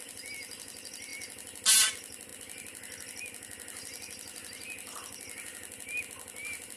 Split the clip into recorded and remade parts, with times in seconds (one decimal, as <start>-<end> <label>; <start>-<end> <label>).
0.0-1.1 recorded; 1.1-1.9 remade; 1.9-6.8 recorded